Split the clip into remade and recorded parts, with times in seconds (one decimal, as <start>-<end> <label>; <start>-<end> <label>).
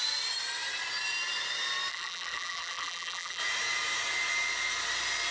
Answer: 0.0-1.9 recorded; 1.9-3.4 remade; 3.4-5.3 recorded